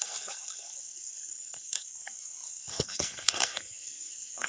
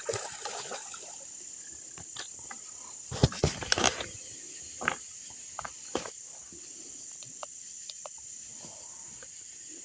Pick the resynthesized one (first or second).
first